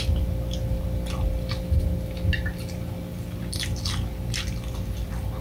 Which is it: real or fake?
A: real